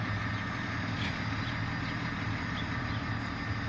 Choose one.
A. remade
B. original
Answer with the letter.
B